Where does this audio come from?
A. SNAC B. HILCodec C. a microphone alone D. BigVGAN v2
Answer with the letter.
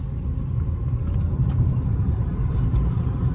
D